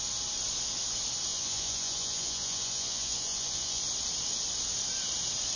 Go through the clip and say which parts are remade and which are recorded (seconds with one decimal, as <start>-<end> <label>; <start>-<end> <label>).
0.0-1.3 recorded; 1.3-3.8 remade; 3.8-5.6 recorded